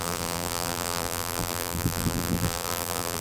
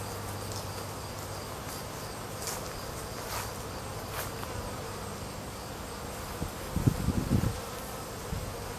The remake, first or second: first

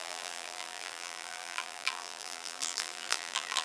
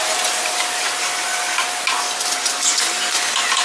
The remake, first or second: first